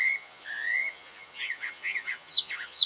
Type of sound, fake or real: fake